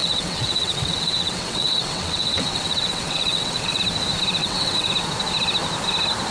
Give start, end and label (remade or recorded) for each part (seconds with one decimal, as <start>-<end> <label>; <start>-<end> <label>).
0.0-3.8 remade; 3.8-4.4 recorded; 4.4-4.9 remade; 4.9-6.3 recorded